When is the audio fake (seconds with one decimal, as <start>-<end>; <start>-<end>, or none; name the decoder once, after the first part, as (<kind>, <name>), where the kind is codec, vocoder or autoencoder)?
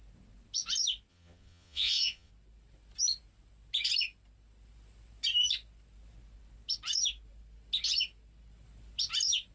1.1-2.3 (vocoder, Vocos)